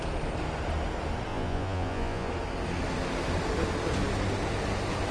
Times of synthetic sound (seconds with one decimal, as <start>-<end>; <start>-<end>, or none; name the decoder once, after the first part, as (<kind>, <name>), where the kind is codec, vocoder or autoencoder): 1.3-2.3 (vocoder, Vocos)